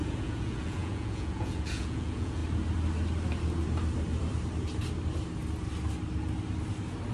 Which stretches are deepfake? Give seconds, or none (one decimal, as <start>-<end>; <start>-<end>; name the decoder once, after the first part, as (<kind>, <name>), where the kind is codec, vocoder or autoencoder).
0.0-2.4 (vocoder, Vocos)